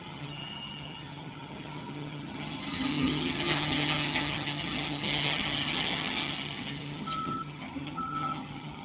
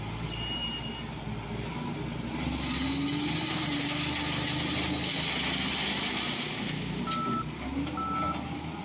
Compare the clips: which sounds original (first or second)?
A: second